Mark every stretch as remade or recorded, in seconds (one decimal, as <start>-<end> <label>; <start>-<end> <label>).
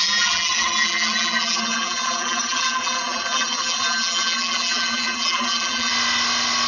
0.0-5.9 remade; 5.9-6.7 recorded